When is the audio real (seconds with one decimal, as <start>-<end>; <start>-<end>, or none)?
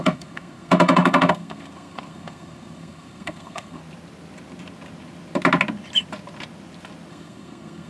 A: 3.8-7.1